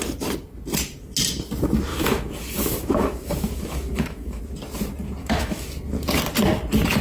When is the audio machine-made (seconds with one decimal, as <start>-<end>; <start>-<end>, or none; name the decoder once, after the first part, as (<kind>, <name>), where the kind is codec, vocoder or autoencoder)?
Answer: 1.9-4.4 (autoencoder, DAC-VAE); 5.2-5.7